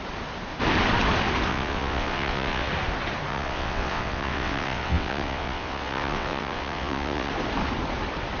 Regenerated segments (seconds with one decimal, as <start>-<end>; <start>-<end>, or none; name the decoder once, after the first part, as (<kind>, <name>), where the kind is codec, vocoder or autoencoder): 1.5-2.7 (vocoder, WaveNeXt); 3.3-7.3